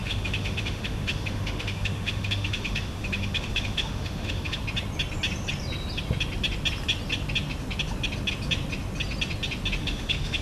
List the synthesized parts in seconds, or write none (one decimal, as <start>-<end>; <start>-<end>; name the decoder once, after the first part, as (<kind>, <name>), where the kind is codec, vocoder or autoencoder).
0.0-4.6 (autoencoder, DAC-VAE); 9.8-10.4